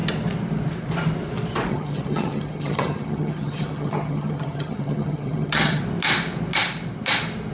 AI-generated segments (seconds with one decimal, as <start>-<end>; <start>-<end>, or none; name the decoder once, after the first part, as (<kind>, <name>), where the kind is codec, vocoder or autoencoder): 1.7-5.8 (vocoder, HiFi-GAN)